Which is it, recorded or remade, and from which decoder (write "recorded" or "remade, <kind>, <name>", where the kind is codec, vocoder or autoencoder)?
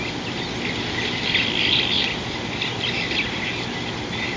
recorded